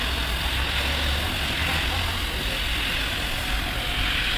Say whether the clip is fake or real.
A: real